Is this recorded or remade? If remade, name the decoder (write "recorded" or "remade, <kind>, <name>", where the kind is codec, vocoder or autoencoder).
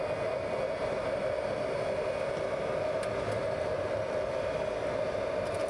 recorded